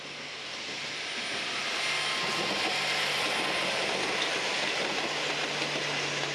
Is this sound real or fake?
real